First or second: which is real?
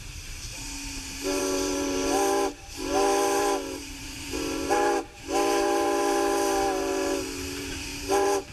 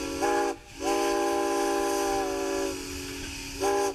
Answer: second